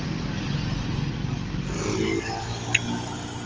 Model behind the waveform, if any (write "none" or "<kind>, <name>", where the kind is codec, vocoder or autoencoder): none